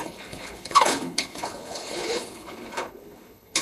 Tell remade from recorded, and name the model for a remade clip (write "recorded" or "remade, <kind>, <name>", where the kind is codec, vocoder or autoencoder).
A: remade, codec, HILCodec